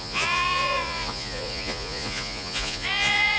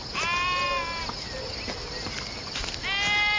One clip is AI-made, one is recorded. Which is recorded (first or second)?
second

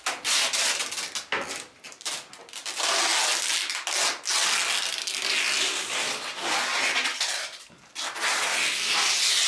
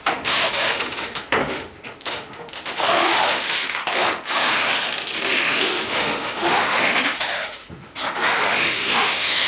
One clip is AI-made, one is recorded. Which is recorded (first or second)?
first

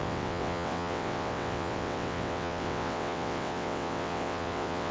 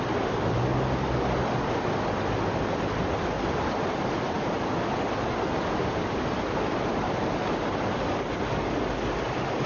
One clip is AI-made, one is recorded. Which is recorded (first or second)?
second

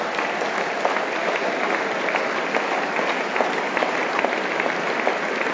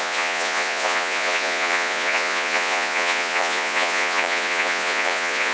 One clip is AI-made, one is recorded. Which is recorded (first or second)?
first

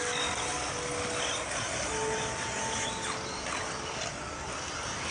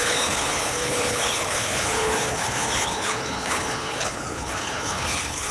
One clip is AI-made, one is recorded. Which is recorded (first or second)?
first